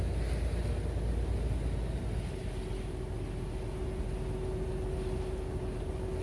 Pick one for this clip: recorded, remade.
recorded